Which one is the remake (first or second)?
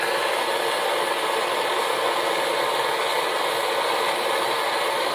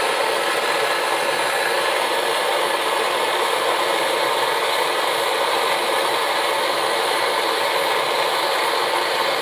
second